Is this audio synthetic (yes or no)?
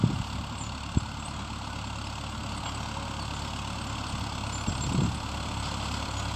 no